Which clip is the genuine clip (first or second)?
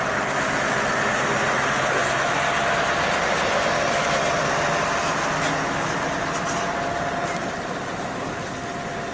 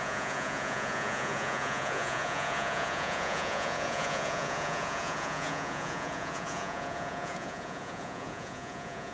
first